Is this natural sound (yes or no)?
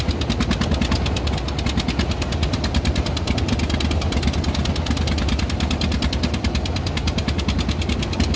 yes